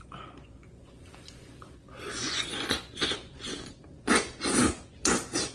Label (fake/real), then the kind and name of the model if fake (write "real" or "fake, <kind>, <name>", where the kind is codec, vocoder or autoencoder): fake, vocoder, Vocos